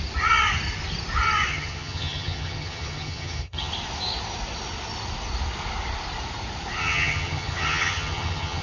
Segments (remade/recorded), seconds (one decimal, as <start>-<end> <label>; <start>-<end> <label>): 0.0-1.5 recorded; 1.5-3.7 remade; 3.7-6.8 recorded; 6.8-8.6 remade